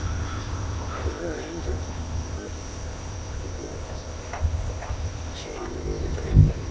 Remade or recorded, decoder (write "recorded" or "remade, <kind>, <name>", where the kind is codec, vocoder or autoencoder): remade, codec, ZipCodec